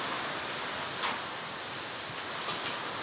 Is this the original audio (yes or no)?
yes